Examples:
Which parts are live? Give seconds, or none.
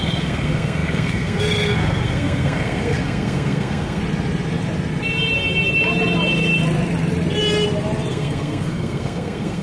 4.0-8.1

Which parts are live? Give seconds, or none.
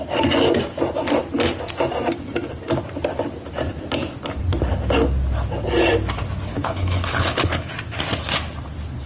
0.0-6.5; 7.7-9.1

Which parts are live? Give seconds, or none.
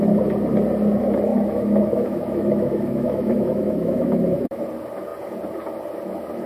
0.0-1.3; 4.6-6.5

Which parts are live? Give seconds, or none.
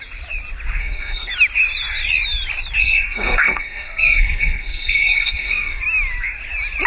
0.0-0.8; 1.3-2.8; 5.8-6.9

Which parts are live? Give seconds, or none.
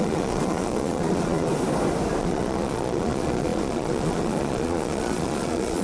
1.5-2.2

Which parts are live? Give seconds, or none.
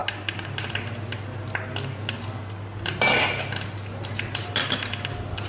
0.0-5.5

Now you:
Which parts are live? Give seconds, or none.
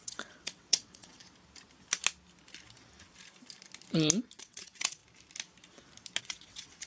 1.2-4.4; 5.0-6.2